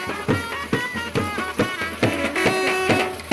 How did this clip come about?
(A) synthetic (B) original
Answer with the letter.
B